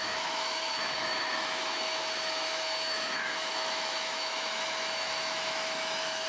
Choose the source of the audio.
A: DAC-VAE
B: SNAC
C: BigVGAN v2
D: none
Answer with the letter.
A